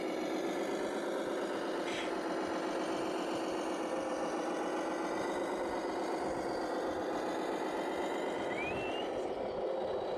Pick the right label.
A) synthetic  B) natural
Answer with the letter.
B